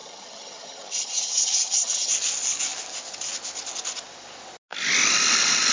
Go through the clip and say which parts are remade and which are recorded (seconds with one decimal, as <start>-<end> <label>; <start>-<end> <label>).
0.0-2.1 remade; 2.1-5.7 recorded